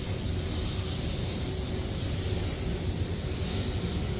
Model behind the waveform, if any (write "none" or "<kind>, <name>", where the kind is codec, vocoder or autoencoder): none